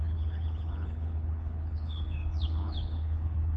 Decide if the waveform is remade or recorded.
remade